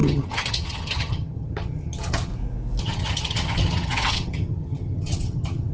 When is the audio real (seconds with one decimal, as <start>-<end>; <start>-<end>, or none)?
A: 2.3-2.8